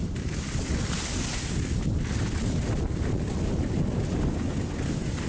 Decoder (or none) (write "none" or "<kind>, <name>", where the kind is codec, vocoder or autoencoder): none